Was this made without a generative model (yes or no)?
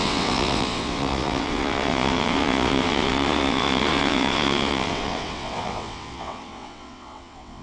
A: no